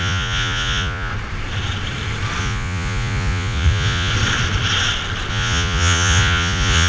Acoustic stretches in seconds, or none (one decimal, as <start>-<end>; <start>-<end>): 1.1-2.4; 4.1-5.3